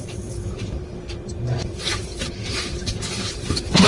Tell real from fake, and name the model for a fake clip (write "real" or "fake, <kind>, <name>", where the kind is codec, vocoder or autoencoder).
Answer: fake, vocoder, BigVGAN v2